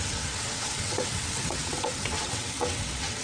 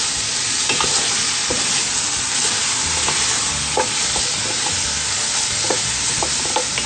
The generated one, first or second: first